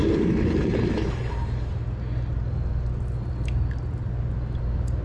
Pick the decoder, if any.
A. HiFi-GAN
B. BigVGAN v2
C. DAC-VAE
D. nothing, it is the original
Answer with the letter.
D